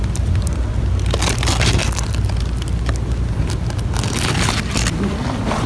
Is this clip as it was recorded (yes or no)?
yes